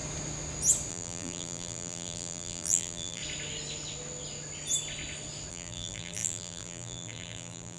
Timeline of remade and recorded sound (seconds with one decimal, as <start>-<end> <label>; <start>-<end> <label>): 0.0-0.9 recorded; 0.9-3.2 remade; 3.2-5.5 recorded; 5.5-7.8 remade